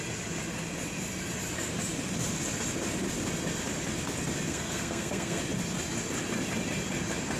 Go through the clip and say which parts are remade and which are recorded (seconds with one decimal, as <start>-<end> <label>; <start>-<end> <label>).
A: 0.0-4.5 recorded; 4.5-5.4 remade; 5.4-7.4 recorded